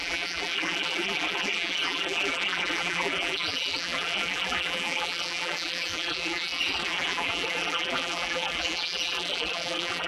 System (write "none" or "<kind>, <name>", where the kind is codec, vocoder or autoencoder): vocoder, BigVGAN v2